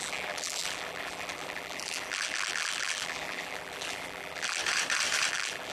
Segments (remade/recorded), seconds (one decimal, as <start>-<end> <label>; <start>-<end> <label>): 0.0-4.6 remade; 4.6-5.3 recorded; 5.3-5.7 remade